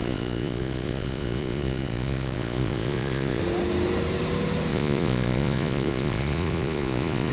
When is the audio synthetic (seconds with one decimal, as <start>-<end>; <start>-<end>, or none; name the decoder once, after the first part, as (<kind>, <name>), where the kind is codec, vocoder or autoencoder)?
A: 0.0-3.4 (vocoder, Vocos); 4.7-7.3